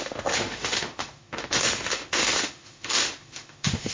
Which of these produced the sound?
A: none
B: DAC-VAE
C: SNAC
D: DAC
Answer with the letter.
B